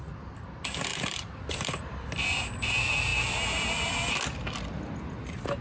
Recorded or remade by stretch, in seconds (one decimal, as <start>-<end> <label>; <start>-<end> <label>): 0.0-0.9 recorded; 0.9-1.8 remade; 1.8-5.6 recorded